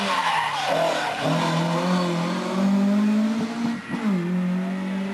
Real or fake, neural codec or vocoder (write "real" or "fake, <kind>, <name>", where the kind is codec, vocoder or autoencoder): real